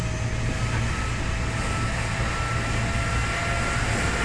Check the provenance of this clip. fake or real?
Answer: real